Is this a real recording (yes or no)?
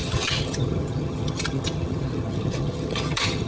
no